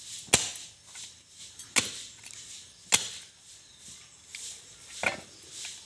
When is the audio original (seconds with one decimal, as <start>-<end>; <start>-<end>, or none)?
0.0-5.9